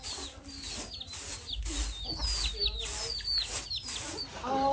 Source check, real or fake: real